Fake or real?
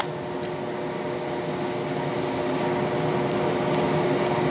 real